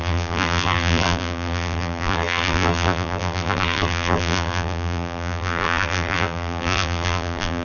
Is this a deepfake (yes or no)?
yes